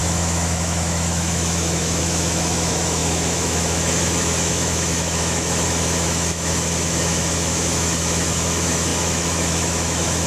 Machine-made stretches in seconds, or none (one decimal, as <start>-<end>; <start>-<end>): 0.0-10.3